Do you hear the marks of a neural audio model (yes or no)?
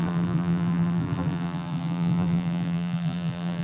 yes